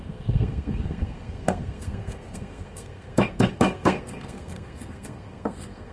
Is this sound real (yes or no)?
no